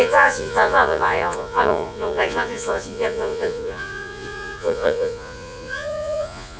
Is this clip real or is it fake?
fake